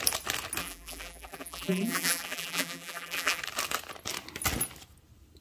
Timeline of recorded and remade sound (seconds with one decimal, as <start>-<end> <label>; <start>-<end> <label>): 0.0-0.6 recorded; 0.6-3.4 remade; 3.4-5.4 recorded